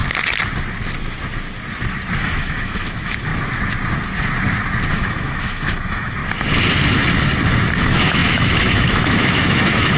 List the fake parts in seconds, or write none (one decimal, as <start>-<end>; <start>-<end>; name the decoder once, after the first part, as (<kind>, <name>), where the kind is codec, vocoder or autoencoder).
2.2-3.3 (autoencoder, DAC-VAE); 4.9-6.2; 7.8-10.0

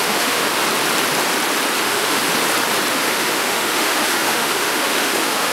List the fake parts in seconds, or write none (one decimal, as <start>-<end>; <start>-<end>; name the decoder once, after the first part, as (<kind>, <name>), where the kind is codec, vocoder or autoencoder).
0.0-0.5 (autoencoder, DAC-VAE); 1.8-2.2; 2.9-5.5

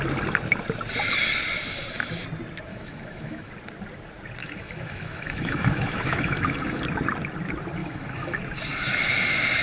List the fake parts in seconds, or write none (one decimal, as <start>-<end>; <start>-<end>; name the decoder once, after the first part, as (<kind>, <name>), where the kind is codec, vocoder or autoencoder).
2.7-3.5 (autoencoder, DAC-VAE); 4.4-6.8; 7.8-8.4

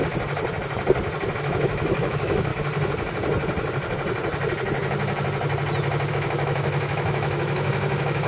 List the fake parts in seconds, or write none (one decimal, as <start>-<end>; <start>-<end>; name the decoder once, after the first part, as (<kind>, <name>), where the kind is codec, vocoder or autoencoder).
1.3-2.5 (autoencoder, DAC-VAE); 6.1-8.3